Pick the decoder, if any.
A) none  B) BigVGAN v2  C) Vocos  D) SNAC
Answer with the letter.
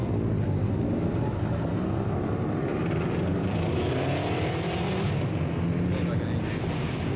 A